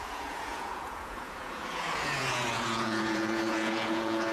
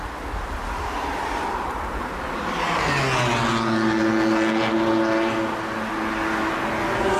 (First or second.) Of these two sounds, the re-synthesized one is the first